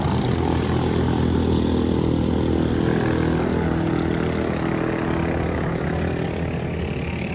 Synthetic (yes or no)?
no